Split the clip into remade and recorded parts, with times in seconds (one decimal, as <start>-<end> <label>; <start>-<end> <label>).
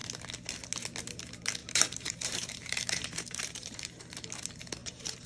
0.0-1.6 recorded; 1.6-4.0 remade; 4.0-4.8 recorded; 4.8-5.3 remade